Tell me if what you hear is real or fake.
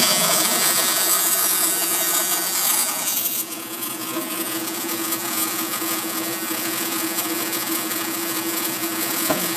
fake